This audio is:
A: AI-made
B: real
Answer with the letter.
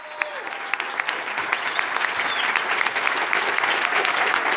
B